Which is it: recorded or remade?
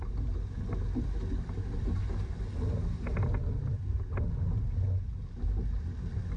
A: recorded